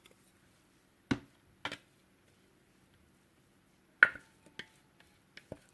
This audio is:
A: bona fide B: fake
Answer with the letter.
A